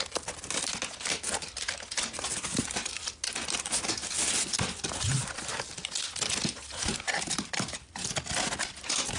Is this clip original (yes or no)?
yes